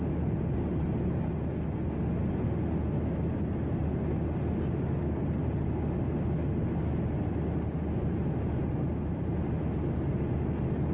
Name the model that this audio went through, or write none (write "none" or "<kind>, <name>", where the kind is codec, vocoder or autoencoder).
none